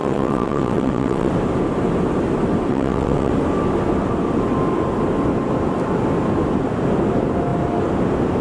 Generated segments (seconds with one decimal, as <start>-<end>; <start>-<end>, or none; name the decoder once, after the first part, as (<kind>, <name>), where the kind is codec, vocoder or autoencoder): 0.0-1.3 (vocoder, WaveNeXt); 2.7-3.3